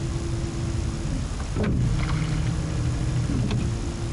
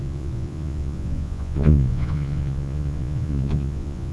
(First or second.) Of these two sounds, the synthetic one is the second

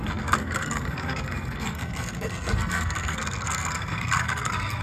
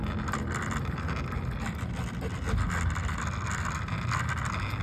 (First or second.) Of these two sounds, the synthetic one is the first